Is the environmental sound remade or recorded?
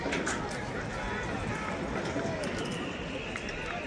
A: recorded